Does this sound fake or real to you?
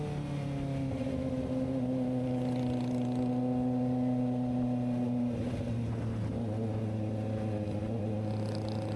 real